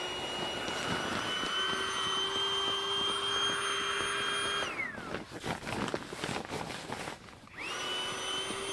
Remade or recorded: recorded